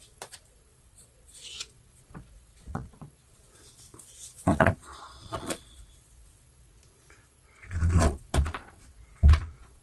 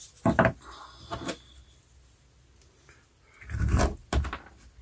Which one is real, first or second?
second